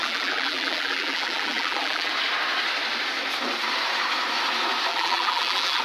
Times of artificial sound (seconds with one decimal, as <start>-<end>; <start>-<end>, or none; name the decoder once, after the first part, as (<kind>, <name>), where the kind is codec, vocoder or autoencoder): 0.0-2.1 (vocoder, BigVGAN v2); 4.9-5.8